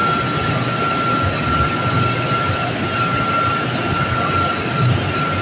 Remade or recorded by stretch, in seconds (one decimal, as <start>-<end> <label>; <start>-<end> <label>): 0.0-5.4 recorded